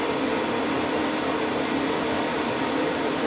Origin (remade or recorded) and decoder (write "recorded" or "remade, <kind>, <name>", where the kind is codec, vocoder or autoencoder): recorded